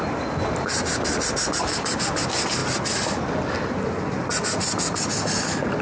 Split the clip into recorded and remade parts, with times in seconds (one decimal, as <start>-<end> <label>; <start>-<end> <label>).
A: 0.0-5.8 recorded